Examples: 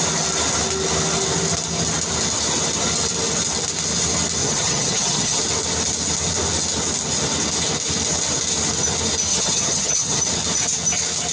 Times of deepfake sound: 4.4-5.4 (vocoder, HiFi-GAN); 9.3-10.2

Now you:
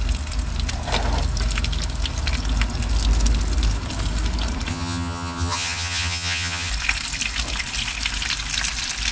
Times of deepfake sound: 4.7-6.7 (vocoder, HiFi-GAN)

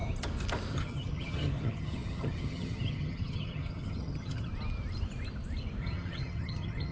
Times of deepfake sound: 0.7-4.5 (vocoder, HiFi-GAN); 5.8-6.9

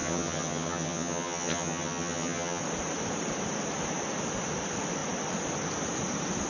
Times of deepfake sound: 0.0-2.6 (vocoder, HiFi-GAN)